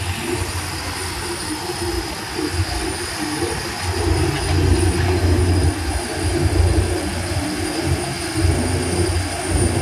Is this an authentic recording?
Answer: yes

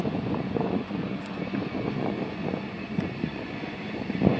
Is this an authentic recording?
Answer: no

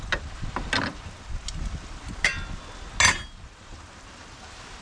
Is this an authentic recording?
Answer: yes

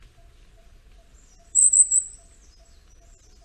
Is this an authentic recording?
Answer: no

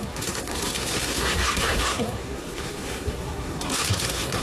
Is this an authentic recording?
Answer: no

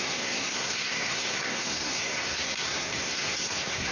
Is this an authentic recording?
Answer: no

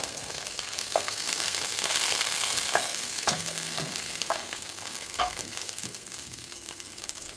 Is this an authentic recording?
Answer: no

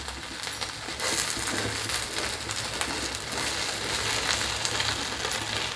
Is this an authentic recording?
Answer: yes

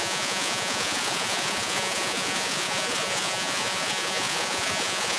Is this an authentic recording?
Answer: no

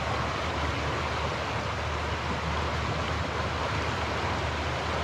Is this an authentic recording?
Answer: yes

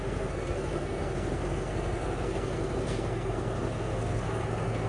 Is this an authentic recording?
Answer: no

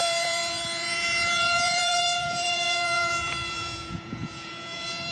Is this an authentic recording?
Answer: no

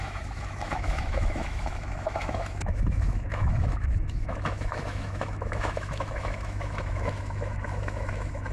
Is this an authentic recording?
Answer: no